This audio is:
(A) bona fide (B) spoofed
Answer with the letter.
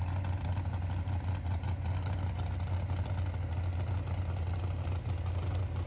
A